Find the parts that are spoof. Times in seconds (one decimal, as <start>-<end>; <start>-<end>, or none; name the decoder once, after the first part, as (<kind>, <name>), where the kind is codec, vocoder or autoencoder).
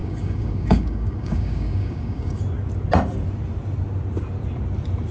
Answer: 0.0-2.4 (codec, DAC)